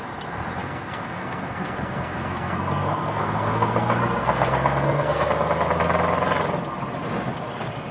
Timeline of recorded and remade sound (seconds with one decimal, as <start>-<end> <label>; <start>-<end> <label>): 0.0-0.6 recorded; 0.6-5.3 remade; 5.3-7.9 recorded